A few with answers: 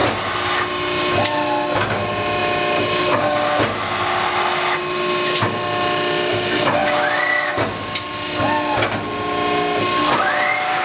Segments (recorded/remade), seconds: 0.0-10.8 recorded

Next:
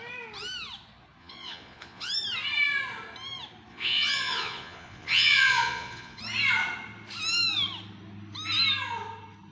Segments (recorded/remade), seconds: 0.0-1.2 recorded; 1.2-2.1 remade; 2.1-3.7 recorded; 3.7-6.2 remade; 6.2-9.5 recorded

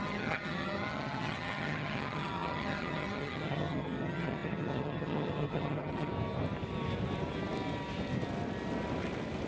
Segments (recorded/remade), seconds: 0.0-6.1 remade; 6.1-9.5 recorded

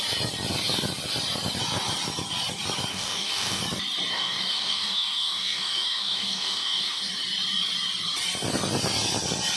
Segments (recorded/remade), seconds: 0.0-2.9 recorded; 2.9-3.6 remade; 3.6-4.1 recorded; 4.1-7.1 remade; 7.1-9.6 recorded

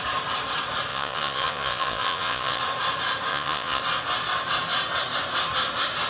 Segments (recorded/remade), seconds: 0.0-0.9 recorded; 0.9-2.6 remade; 2.6-3.3 recorded; 3.3-3.8 remade; 3.8-6.1 recorded

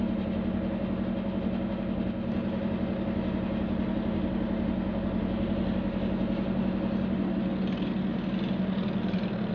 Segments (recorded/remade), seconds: 0.0-9.5 recorded